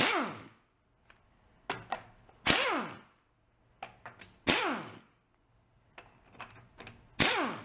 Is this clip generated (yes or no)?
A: no